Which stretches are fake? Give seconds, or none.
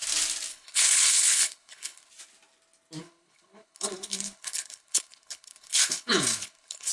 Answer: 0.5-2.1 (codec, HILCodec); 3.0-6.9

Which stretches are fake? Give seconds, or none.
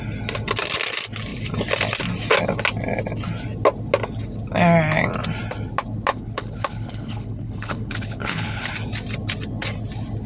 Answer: 6.1-8.7 (codec, HILCodec)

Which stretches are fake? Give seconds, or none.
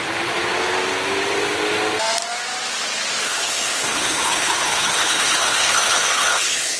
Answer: 3.2-6.8 (codec, HILCodec)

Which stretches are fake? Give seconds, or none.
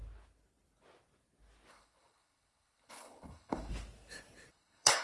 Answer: 1.7-3.7 (codec, HILCodec); 4.5-5.0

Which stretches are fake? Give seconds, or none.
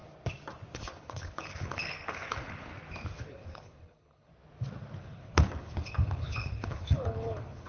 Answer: 0.7-2.7 (codec, HILCodec); 3.2-4.3; 5.0-7.7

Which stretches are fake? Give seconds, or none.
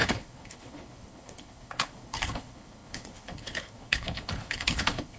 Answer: 0.0-5.2 (codec, HILCodec)